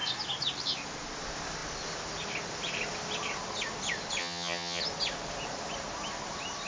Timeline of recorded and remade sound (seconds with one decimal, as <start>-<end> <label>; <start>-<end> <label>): 0.0-4.2 recorded; 4.2-4.8 remade; 4.8-6.7 recorded